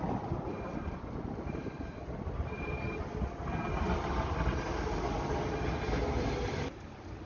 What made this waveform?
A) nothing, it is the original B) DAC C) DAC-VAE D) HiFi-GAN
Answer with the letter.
A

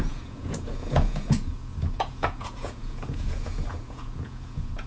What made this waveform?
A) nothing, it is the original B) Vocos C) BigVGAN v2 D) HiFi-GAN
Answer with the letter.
B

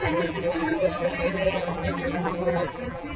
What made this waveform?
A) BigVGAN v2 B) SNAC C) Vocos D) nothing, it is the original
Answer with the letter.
A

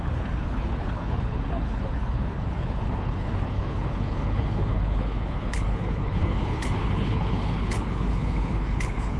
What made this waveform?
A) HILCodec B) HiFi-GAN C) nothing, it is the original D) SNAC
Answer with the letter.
A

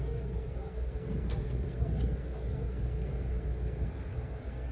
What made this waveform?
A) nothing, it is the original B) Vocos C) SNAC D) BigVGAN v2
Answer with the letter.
C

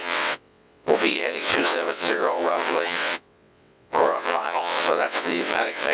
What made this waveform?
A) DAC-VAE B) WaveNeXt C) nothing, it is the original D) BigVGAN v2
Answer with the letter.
B